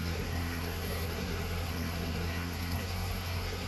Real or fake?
fake